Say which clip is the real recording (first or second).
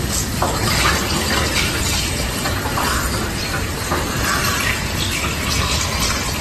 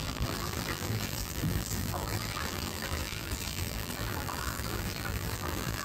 first